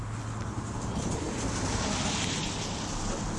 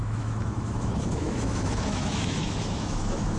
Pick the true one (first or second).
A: first